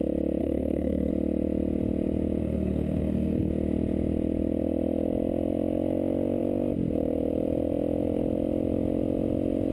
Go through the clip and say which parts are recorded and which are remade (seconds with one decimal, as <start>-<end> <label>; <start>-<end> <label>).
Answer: 0.0-0.4 recorded; 0.4-1.1 remade; 1.1-2.4 recorded; 2.4-3.5 remade; 3.5-9.7 recorded